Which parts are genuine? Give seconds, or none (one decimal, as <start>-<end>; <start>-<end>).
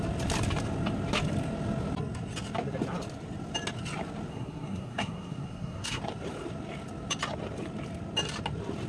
0.0-4.3; 6.0-8.9